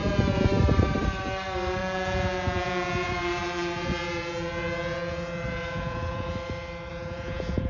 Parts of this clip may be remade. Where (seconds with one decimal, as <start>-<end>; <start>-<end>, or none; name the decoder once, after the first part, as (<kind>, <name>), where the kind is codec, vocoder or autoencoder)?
0.0-0.5 (vocoder, Vocos); 1.8-6.3; 6.9-7.7